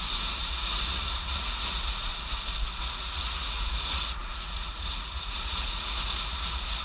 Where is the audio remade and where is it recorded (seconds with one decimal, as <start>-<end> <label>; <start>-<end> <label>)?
0.0-2.1 remade; 2.1-2.8 recorded; 2.8-6.8 remade